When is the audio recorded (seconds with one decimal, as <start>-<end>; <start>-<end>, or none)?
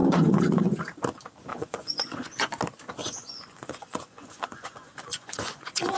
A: 0.8-1.5; 2.6-3.0